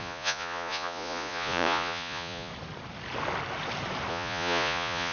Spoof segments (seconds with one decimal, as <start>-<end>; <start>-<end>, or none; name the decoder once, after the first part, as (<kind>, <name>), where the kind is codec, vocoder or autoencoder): 0.0-2.5 (vocoder, Vocos); 4.1-5.1

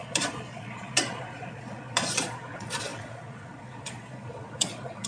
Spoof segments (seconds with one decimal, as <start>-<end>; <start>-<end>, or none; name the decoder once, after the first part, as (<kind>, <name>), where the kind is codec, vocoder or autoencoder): 0.0-5.1 (vocoder, Vocos)

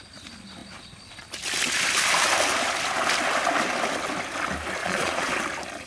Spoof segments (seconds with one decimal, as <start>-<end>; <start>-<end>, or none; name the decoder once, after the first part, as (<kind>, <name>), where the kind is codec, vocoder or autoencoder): 4.8-5.3 (vocoder, Vocos)

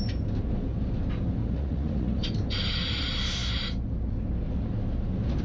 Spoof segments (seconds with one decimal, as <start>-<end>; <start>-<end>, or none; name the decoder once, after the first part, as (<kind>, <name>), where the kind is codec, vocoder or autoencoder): 1.4-2.2 (vocoder, Vocos)

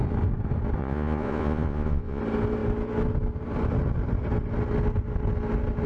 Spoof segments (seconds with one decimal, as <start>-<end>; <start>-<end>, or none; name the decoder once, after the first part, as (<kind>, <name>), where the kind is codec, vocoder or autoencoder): 0.8-2.2 (vocoder, Vocos)

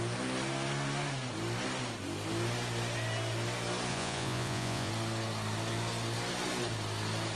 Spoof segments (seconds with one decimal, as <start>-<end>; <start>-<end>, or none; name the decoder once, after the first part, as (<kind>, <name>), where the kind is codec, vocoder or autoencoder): 3.9-4.9 (vocoder, Vocos)

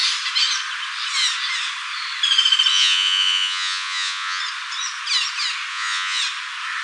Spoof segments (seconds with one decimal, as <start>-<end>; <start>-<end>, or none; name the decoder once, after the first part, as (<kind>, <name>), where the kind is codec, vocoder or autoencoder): 2.7-4.4 (vocoder, Vocos); 5.7-6.2

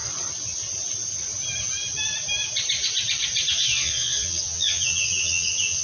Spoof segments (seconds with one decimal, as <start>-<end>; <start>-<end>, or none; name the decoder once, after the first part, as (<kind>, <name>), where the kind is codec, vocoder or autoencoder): 3.5-5.8 (vocoder, Vocos)